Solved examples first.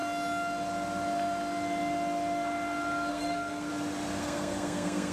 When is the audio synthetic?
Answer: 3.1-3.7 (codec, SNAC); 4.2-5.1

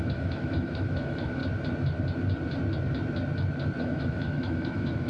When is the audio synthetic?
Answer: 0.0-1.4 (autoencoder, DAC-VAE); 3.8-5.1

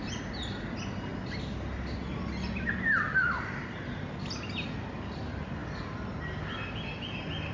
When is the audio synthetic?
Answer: 3.2-3.8 (vocoder, BigVGAN v2)

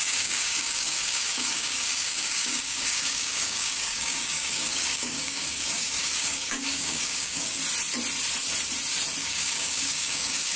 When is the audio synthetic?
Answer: 0.0-7.6 (codec, DAC); 9.2-10.6